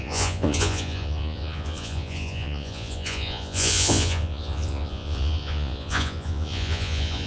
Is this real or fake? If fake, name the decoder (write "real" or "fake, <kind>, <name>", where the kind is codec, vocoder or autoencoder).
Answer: fake, vocoder, Vocos